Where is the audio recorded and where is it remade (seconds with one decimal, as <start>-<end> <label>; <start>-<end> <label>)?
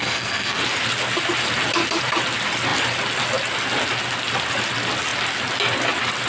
0.0-0.6 remade; 0.6-6.3 recorded